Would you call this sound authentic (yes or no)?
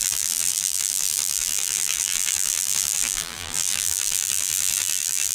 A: no